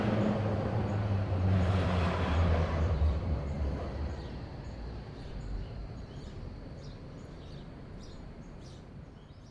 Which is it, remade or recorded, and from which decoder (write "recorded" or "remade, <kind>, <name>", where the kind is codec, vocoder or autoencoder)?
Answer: remade, vocoder, BigVGAN v2